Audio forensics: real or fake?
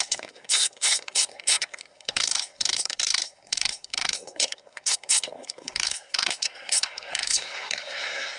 fake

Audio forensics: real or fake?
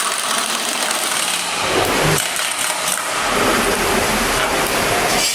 real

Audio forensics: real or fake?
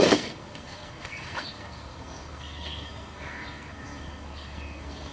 fake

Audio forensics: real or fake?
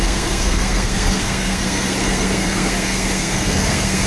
fake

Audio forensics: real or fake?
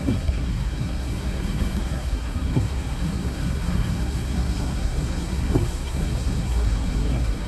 fake